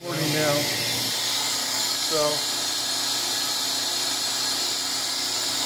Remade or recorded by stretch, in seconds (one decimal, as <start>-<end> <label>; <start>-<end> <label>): 0.0-1.6 recorded; 1.6-2.3 remade; 2.3-5.7 recorded